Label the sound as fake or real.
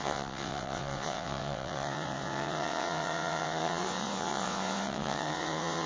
fake